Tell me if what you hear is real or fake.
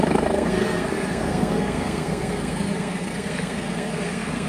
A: fake